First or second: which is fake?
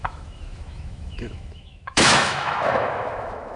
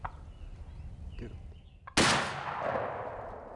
first